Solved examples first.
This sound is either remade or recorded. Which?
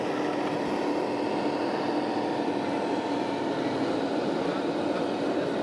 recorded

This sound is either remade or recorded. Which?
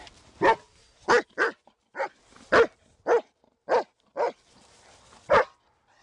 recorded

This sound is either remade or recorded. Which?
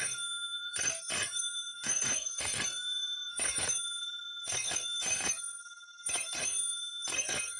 remade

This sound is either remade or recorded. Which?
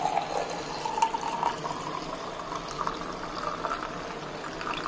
recorded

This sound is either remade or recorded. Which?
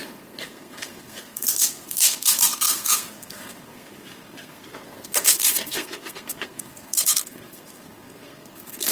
remade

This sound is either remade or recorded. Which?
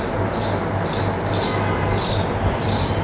recorded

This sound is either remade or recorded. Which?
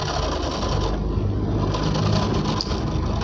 recorded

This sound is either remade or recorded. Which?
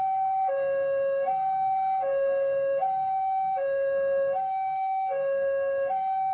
remade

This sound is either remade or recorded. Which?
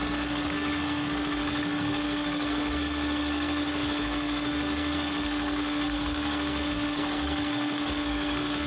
remade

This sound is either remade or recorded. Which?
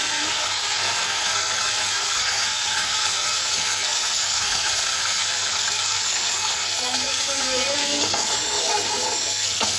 remade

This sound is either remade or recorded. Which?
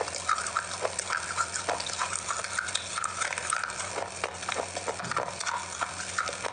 recorded